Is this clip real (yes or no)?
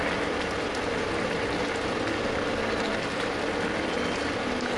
yes